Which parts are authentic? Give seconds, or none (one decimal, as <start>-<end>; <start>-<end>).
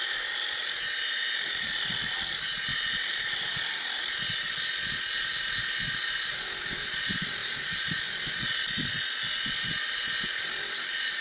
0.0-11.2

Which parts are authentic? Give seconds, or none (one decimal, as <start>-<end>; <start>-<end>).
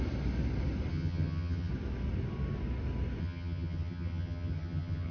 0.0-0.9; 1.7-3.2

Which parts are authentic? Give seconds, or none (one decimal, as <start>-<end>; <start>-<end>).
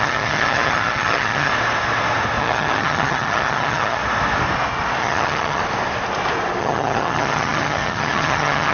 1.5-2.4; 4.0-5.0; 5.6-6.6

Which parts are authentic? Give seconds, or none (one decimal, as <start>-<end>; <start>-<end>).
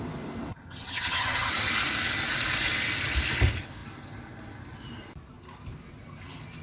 0.0-0.5; 1.5-6.6